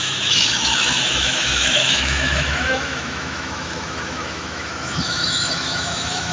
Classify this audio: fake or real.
fake